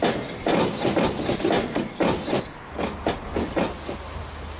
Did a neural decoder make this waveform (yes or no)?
no